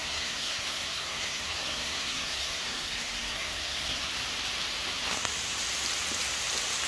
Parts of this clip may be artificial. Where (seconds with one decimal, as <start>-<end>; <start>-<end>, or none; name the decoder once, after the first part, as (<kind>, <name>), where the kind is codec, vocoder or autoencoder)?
0.0-4.1 (codec, SNAC)